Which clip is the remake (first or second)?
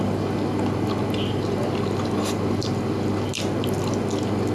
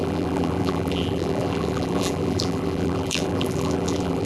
second